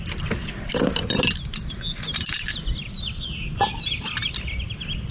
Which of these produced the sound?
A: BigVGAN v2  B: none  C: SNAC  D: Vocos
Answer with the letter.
B